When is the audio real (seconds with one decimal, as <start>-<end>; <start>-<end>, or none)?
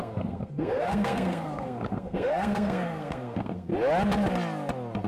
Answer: 3.7-5.1